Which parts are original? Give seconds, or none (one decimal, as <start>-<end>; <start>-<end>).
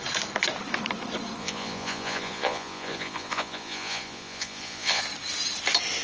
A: 0.0-1.4; 5.0-6.0